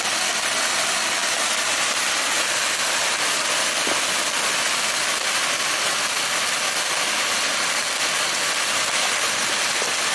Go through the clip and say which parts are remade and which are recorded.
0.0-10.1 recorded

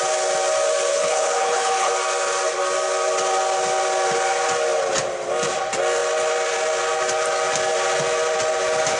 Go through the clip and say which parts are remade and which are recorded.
0.0-0.9 recorded; 0.9-1.9 remade; 1.9-9.0 recorded

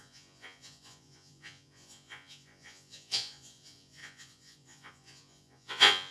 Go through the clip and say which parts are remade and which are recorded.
0.0-6.1 remade

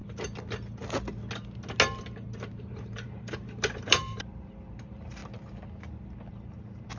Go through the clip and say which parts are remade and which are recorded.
0.0-2.6 recorded; 2.6-5.2 remade; 5.2-6.3 recorded; 6.3-7.0 remade

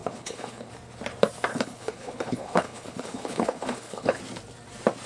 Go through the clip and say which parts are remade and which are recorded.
0.0-0.7 remade; 0.7-1.5 recorded; 1.5-4.2 remade; 4.2-5.1 recorded

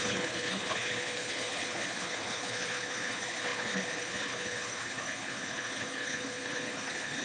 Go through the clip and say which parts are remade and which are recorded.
0.0-7.2 remade